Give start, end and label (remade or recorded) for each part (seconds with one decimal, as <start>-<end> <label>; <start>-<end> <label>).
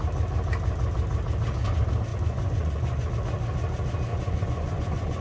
0.0-2.1 recorded; 2.1-3.1 remade; 3.1-4.1 recorded; 4.1-5.2 remade